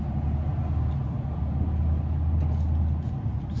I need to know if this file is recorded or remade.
recorded